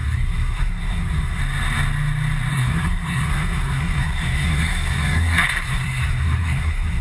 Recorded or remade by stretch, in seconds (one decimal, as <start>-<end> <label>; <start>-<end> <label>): 0.0-1.4 remade; 1.4-2.5 recorded; 2.5-7.0 remade